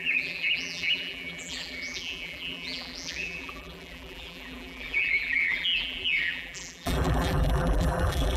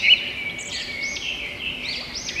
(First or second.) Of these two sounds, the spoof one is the first